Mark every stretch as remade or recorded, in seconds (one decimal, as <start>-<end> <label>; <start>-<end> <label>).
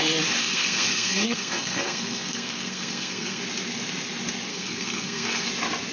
0.0-0.4 recorded; 0.4-3.4 remade; 3.4-4.5 recorded; 4.5-5.5 remade; 5.5-5.9 recorded